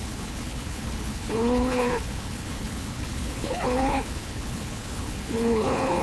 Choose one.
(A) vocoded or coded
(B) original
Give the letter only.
A